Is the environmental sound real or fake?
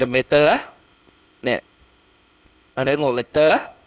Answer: fake